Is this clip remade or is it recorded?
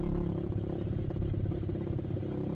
recorded